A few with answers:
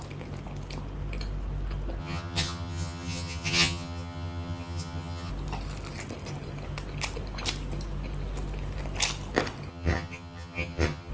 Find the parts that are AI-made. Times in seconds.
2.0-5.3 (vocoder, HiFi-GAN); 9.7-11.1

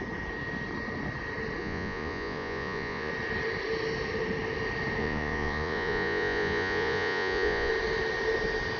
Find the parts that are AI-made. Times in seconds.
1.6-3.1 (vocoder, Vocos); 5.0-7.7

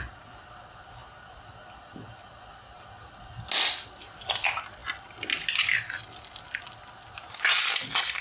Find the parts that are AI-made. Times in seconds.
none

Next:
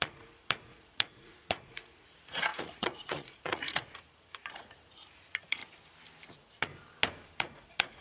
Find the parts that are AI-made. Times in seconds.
0.0-5.6 (vocoder, Vocos); 6.3-6.7; 7.4-8.0

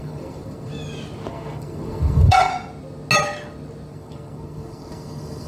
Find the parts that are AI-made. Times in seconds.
0.0-0.7 (codec, SNAC); 1.3-2.5; 3.9-5.5

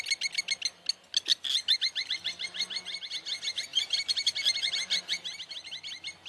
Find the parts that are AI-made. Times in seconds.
3.7-5.5 (vocoder, BigVGAN v2)

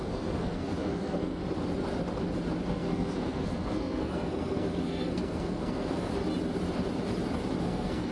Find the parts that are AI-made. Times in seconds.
0.0-1.4 (codec, SNAC); 2.7-6.1; 7.6-8.1

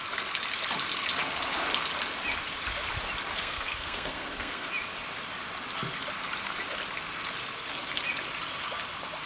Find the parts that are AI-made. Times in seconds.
3.3-4.7 (codec, SNAC)